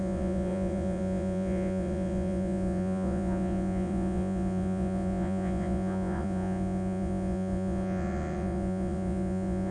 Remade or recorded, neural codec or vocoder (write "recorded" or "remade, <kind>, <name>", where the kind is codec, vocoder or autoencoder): remade, vocoder, Vocos